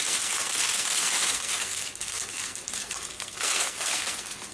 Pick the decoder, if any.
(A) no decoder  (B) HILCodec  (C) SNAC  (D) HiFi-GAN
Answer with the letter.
C